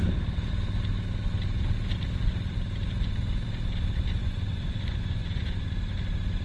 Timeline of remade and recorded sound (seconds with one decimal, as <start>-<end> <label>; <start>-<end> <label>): 0.0-4.2 recorded; 4.2-5.6 remade; 5.6-6.4 recorded